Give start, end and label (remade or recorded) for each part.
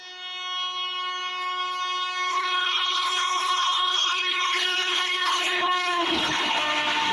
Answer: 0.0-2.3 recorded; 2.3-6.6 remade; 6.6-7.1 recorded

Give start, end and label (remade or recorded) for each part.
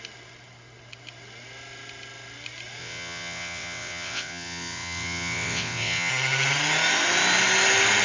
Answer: 0.0-2.8 recorded; 2.8-6.1 remade; 6.1-8.0 recorded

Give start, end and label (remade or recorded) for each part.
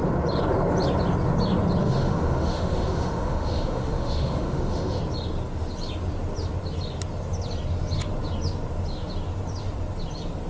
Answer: 0.0-1.8 recorded; 1.8-5.0 remade; 5.0-10.5 recorded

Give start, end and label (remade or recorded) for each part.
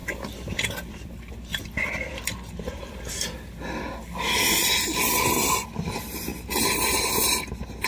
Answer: 0.0-3.1 remade; 3.1-7.9 recorded